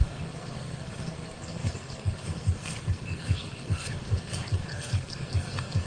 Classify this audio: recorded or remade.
remade